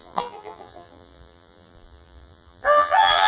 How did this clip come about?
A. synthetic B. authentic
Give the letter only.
A